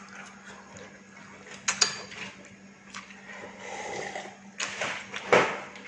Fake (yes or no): no